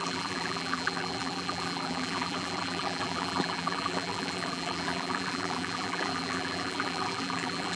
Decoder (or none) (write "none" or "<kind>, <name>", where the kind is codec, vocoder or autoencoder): vocoder, BigVGAN v2